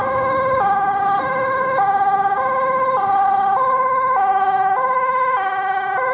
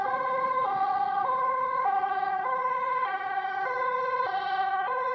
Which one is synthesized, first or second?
second